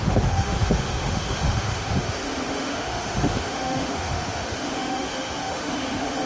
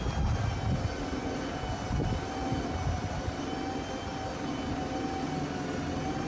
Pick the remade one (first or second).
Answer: first